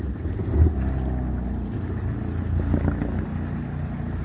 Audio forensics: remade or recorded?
recorded